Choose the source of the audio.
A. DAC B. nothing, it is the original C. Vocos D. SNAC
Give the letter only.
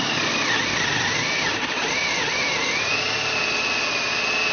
B